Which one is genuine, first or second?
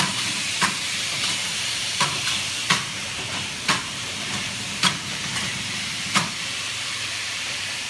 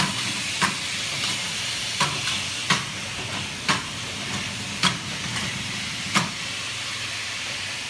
second